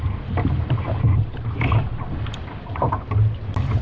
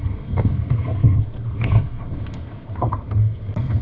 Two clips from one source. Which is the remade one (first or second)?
second